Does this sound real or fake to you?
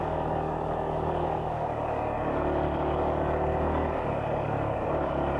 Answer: fake